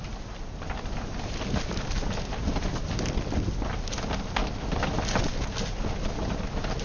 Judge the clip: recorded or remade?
recorded